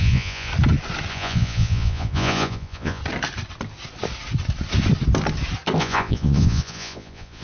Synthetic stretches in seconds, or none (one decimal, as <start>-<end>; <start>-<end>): 0.0-0.5; 1.1-3.0; 5.8-7.4